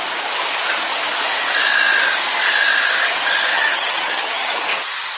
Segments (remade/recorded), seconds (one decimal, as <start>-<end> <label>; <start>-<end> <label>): 0.0-3.5 recorded; 3.5-4.6 remade; 4.6-5.2 recorded